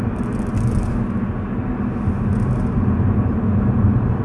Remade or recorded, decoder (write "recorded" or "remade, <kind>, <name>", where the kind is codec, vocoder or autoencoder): recorded